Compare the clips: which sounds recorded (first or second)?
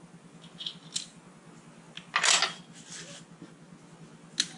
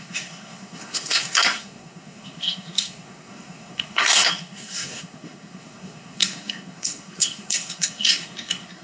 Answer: first